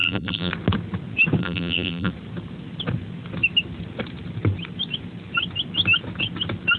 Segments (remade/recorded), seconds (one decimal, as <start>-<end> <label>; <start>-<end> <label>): 0.0-0.5 remade; 0.5-1.4 recorded; 1.4-2.1 remade; 2.1-6.8 recorded